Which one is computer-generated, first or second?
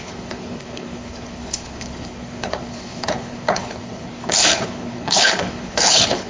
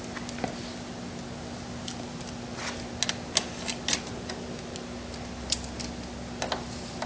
first